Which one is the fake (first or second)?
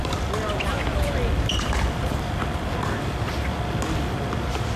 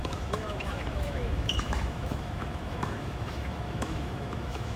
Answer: second